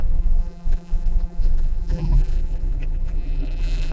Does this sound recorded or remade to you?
remade